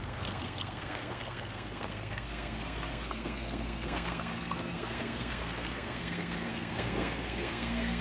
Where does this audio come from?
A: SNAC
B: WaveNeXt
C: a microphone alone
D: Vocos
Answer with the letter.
A